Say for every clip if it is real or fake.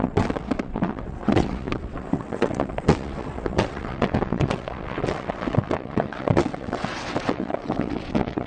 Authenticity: fake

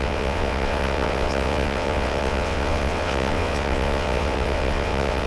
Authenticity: fake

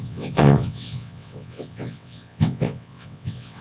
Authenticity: fake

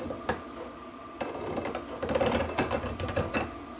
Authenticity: real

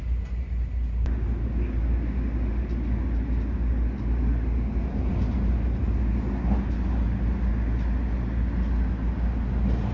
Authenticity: real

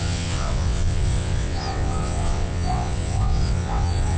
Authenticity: fake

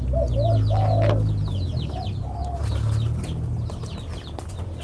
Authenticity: real